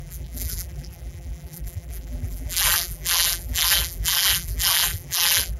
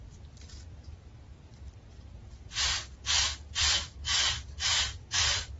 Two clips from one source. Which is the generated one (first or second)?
first